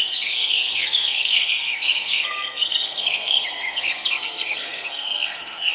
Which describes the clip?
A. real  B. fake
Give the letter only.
B